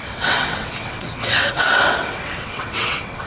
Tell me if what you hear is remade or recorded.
remade